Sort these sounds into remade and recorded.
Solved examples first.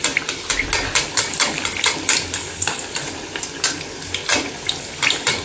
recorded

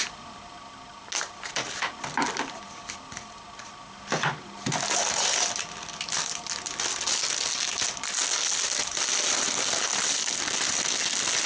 recorded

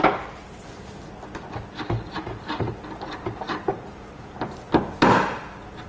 recorded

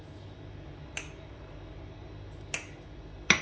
recorded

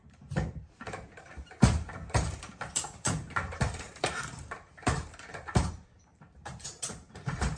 remade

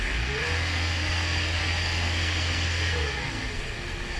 remade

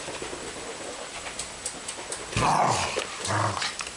recorded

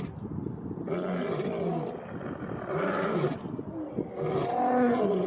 recorded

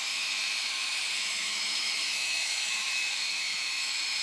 remade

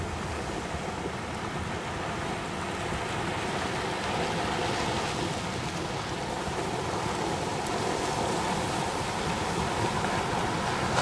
recorded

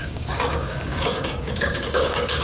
remade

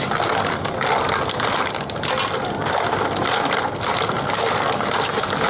recorded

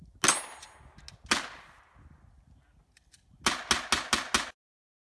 recorded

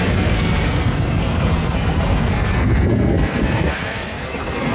remade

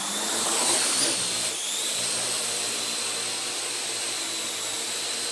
recorded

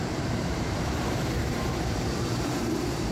remade